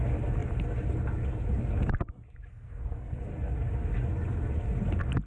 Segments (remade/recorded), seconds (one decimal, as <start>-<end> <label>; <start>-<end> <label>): 0.0-2.5 recorded; 2.5-3.2 remade; 3.2-5.3 recorded